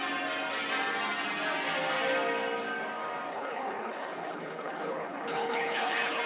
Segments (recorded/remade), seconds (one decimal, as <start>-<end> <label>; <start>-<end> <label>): 0.0-3.3 recorded; 3.3-6.2 remade